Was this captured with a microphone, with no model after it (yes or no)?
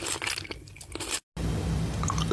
yes